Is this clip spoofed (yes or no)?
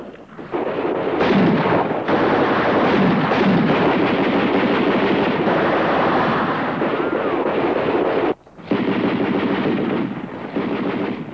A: no